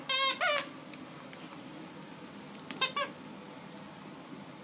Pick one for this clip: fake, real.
real